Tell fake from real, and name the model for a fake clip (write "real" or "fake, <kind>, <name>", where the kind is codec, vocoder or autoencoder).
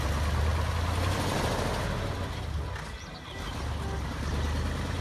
real